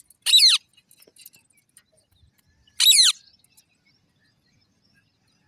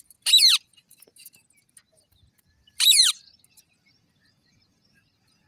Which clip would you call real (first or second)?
first